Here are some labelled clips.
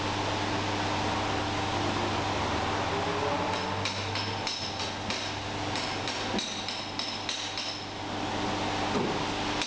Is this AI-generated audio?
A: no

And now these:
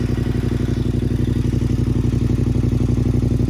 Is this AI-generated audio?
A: no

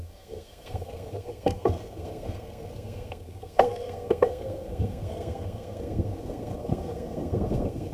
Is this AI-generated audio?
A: yes